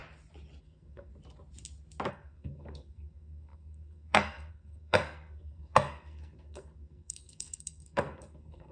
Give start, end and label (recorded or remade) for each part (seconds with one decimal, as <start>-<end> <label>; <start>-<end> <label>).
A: 0.0-0.6 recorded; 0.6-1.1 remade; 1.1-2.1 recorded; 2.1-8.7 remade